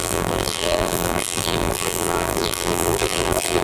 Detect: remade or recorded remade